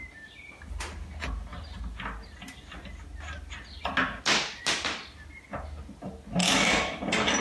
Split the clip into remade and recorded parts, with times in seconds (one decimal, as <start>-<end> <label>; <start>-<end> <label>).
0.0-6.4 recorded; 6.4-7.0 remade; 7.0-7.4 recorded